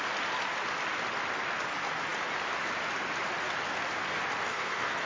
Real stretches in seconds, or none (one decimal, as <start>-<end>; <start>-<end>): 0.0-4.5